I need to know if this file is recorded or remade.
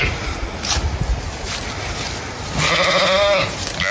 recorded